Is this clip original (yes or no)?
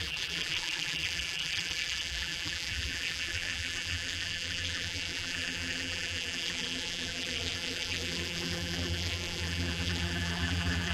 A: no